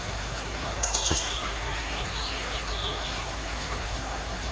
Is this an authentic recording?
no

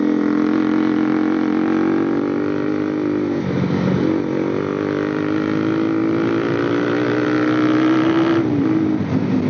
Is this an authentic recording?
yes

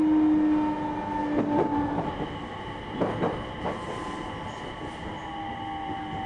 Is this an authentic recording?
yes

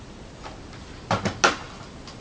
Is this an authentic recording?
yes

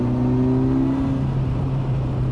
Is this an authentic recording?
yes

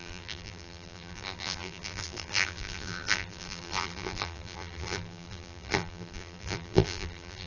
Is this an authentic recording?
no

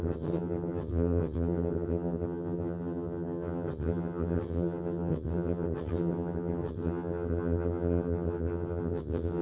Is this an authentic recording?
no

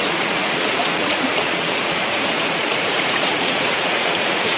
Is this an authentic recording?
no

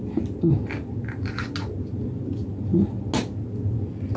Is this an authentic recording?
yes